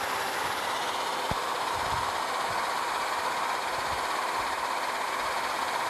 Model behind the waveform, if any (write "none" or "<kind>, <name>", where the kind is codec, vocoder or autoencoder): vocoder, BigVGAN v2